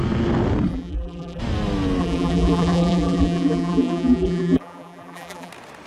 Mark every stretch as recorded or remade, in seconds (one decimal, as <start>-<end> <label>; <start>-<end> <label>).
0.0-0.7 recorded; 0.7-1.4 remade; 1.4-2.0 recorded; 2.0-5.5 remade; 5.5-5.9 recorded